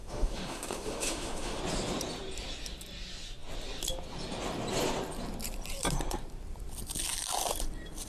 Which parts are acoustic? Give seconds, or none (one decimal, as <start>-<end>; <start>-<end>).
1.6-8.1